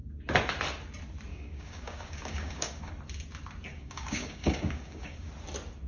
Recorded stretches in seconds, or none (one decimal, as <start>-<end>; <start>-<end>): 0.0-1.3; 2.9-3.7; 5.3-5.9